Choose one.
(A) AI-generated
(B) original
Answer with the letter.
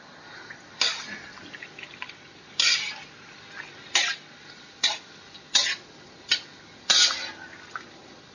B